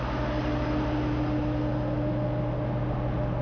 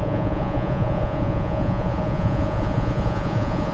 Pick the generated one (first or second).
second